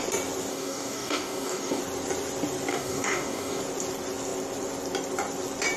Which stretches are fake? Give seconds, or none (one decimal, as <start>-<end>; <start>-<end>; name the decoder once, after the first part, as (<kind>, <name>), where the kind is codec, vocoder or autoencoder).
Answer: 0.5-1.8 (codec, DAC); 2.7-3.6